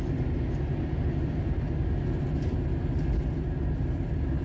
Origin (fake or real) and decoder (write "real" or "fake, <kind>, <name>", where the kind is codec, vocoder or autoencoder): real